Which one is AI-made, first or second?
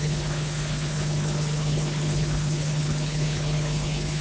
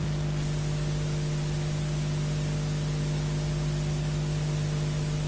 first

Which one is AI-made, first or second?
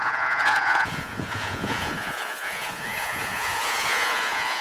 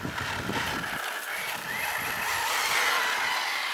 first